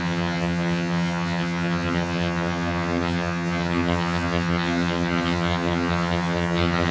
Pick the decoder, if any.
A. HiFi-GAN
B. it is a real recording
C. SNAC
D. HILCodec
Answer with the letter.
A